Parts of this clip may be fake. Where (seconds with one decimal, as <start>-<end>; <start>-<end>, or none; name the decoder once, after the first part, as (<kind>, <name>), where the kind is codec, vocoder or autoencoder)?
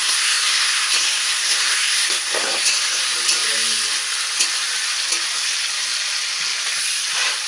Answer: 0.0-3.0 (codec, SNAC)